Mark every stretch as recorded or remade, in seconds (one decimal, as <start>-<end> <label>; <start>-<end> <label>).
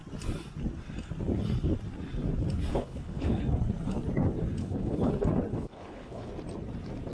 0.0-2.7 recorded; 2.7-3.4 remade; 3.4-4.6 recorded; 4.6-5.1 remade; 5.1-5.5 recorded; 5.5-6.3 remade; 6.3-7.1 recorded